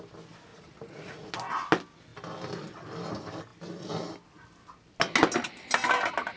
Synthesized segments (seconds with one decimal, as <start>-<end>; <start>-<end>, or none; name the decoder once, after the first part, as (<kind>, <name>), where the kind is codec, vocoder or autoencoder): 0.5-1.3 (vocoder, Vocos)